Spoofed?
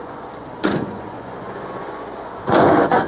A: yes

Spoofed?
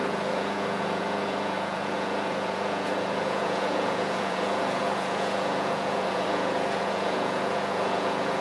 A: yes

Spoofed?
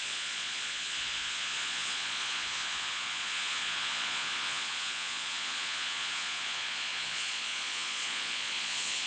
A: yes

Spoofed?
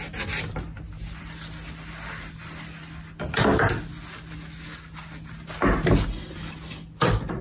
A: no